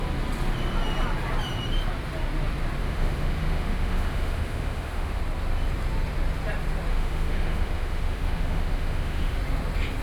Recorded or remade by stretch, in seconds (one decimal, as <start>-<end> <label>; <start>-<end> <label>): 0.0-2.8 recorded; 2.8-5.2 remade; 5.2-6.9 recorded; 6.9-9.4 remade; 9.4-10.0 recorded